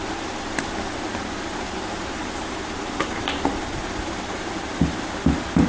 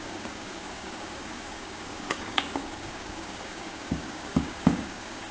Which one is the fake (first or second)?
second